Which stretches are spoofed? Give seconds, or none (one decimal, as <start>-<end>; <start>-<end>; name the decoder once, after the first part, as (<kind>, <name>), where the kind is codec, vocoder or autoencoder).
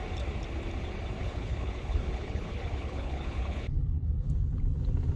1.2-4.3 (codec, HILCodec)